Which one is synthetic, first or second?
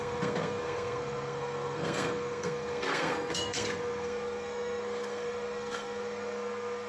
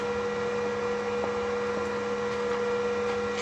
first